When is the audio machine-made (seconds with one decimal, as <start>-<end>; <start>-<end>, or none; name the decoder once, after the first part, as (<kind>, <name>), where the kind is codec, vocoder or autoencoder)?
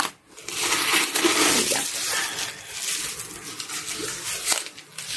none